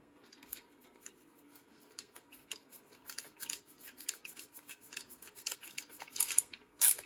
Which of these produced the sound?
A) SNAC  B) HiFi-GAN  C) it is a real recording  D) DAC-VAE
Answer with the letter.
A